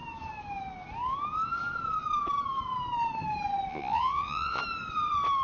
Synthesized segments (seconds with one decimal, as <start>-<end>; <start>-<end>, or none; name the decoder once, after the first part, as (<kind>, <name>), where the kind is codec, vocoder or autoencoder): 3.7-4.6 (vocoder, Vocos)